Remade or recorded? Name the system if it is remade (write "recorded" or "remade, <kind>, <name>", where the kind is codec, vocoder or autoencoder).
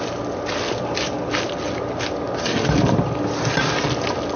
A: recorded